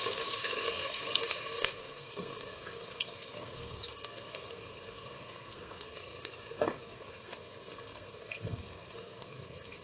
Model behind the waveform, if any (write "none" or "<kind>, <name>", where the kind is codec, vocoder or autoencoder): codec, SNAC